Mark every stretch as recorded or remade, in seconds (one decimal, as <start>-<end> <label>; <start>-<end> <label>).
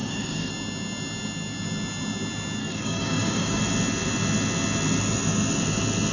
0.0-0.5 remade; 0.5-2.6 recorded; 2.6-3.6 remade; 3.6-6.1 recorded